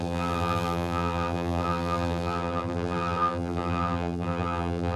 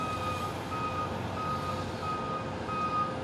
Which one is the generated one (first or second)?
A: first